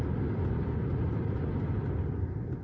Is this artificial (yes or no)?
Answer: no